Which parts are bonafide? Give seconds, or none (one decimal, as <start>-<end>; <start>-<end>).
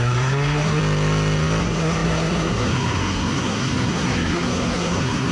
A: 0.8-1.6